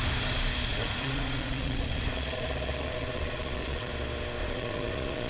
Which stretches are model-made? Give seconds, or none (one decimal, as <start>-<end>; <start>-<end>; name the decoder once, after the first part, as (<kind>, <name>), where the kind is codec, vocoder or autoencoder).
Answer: 0.7-3.9 (vocoder, Vocos); 4.4-5.3